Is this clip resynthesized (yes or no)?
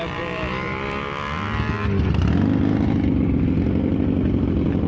no